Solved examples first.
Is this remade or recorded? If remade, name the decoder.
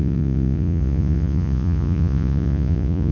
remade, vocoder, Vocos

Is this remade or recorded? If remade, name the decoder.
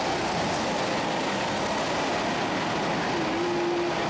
recorded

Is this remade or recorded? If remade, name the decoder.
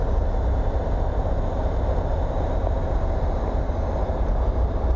recorded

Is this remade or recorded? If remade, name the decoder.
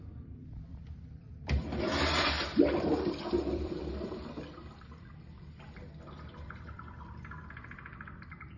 remade, vocoder, BigVGAN v2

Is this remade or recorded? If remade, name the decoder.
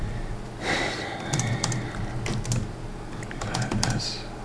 recorded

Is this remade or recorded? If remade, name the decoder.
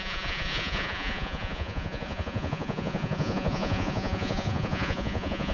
remade, vocoder, Vocos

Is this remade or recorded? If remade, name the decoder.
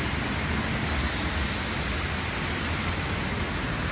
recorded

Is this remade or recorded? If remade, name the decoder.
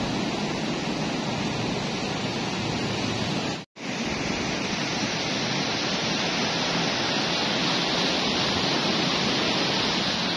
recorded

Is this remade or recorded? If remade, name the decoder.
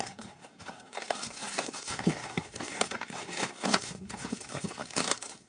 remade, codec, SNAC